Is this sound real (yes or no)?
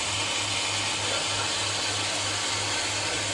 yes